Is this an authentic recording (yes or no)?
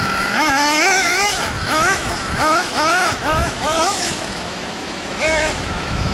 no